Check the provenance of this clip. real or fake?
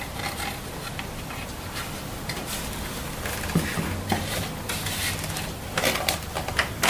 real